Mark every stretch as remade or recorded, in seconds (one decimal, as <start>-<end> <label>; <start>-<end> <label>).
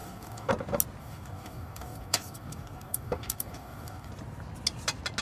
0.0-0.5 remade; 0.5-1.0 recorded; 1.0-4.1 remade; 4.1-5.2 recorded